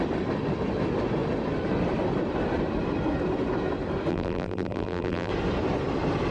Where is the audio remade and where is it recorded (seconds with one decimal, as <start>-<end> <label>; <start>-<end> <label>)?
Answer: 0.0-4.1 recorded; 4.1-5.3 remade; 5.3-6.3 recorded